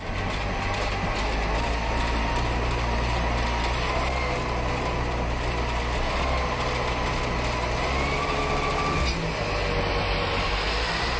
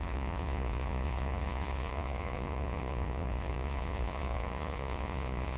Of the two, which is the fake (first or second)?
second